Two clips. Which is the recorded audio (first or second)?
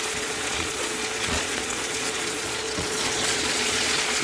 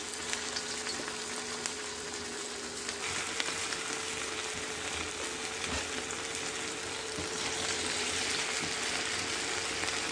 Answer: second